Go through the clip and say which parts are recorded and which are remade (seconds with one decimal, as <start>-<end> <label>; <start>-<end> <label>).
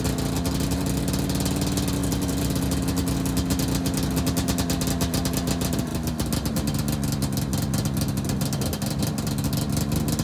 0.0-2.0 recorded; 2.0-2.6 remade; 2.6-10.2 recorded